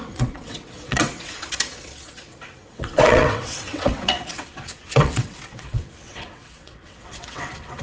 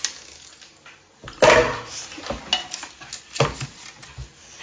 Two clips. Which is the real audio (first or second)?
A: second